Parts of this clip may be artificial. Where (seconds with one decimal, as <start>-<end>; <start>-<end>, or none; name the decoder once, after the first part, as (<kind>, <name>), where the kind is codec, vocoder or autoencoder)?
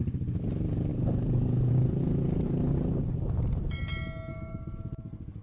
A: 0.9-1.7 (codec, DAC); 4.3-4.8